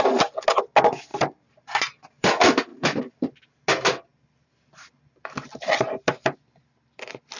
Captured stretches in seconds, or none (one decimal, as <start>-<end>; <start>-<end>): 0.0-1.1; 2.3-2.7; 3.3-7.4